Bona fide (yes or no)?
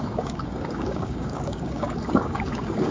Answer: no